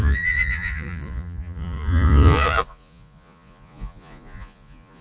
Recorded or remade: remade